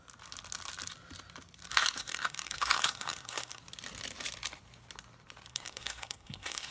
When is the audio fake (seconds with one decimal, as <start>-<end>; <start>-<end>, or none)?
1.7-3.6; 5.5-6.7